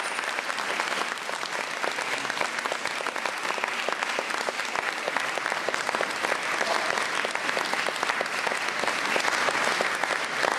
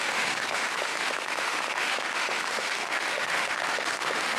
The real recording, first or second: first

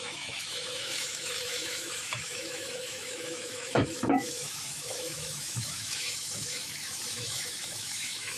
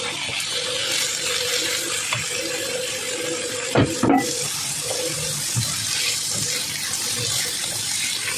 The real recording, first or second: second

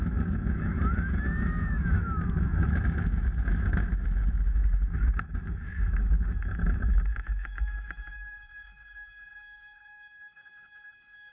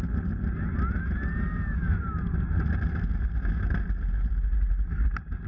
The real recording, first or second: second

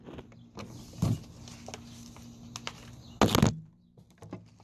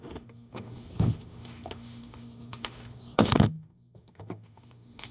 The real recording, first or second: first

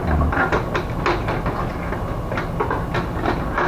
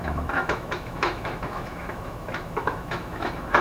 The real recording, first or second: first